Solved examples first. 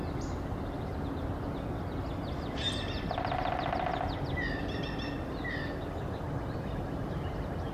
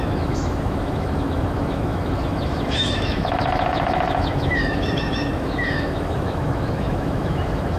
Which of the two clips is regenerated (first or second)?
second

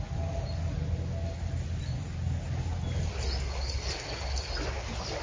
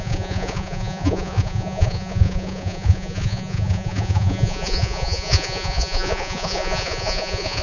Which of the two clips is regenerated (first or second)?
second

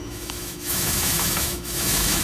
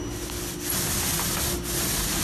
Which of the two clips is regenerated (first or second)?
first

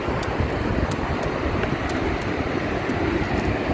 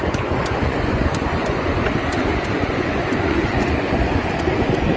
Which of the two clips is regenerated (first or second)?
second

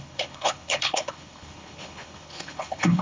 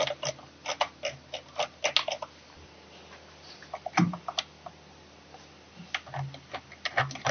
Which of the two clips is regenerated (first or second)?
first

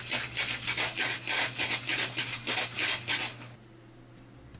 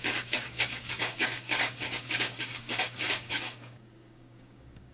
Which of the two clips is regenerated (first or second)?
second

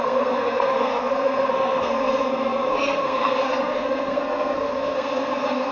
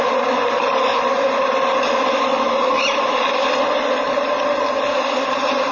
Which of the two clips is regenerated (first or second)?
first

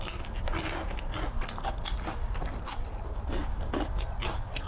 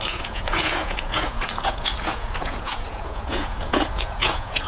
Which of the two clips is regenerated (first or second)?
second